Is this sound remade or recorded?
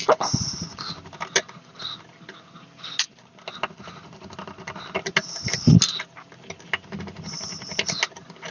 recorded